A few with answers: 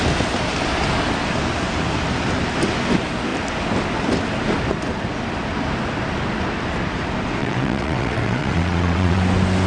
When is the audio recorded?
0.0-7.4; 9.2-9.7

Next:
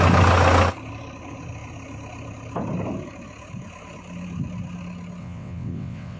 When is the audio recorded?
0.0-5.2

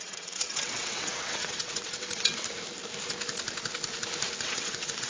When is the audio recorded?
2.3-4.4

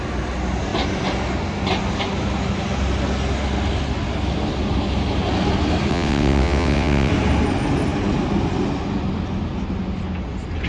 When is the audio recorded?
0.0-5.9; 7.1-10.7

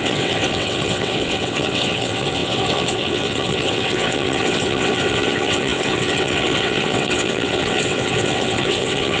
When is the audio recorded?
none

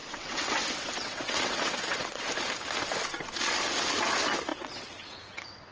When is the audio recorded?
2.3-4.5